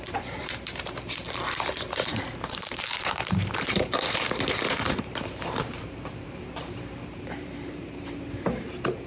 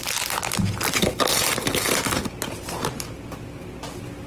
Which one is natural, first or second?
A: second